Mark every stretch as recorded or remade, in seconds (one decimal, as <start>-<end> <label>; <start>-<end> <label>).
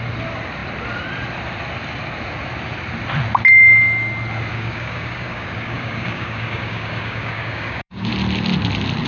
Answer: 0.0-4.5 recorded; 4.5-8.1 remade; 8.1-9.1 recorded